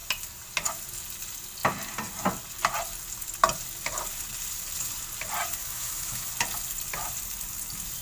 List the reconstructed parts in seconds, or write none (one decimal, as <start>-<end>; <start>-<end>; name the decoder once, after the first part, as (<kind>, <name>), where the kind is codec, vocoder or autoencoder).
5.6-6.3 (autoencoder, DAC-VAE)